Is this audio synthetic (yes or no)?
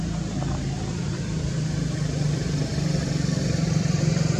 yes